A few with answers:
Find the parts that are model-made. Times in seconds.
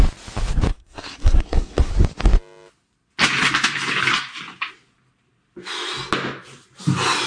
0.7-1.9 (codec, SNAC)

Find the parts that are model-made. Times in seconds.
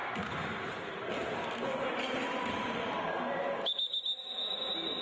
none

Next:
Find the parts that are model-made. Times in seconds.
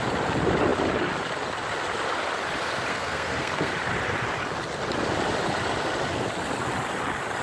2.9-3.7 (codec, SNAC)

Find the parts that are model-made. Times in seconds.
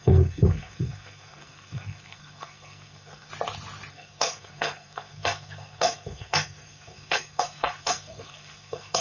0.0-3.3 (codec, SNAC); 3.9-9.0